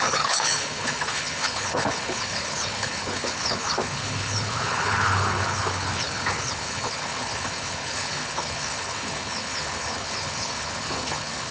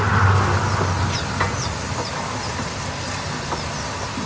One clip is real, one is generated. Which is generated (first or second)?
first